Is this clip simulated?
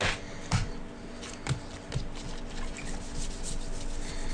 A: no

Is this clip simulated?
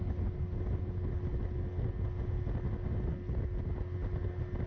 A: no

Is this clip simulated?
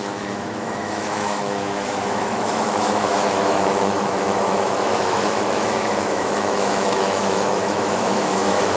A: yes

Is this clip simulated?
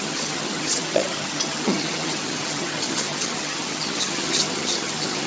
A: yes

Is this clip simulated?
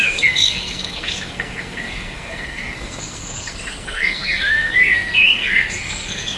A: yes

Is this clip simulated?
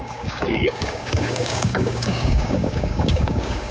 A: yes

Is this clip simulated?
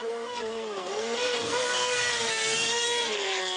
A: yes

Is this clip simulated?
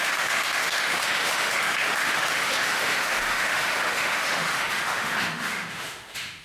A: yes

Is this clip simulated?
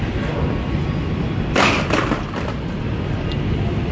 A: no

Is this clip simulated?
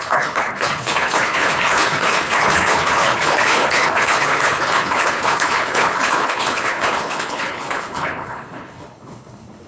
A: yes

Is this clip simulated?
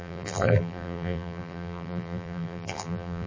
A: yes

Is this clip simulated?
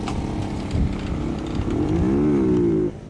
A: no